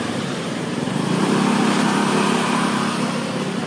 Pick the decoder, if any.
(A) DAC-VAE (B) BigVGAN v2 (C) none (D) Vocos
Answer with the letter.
B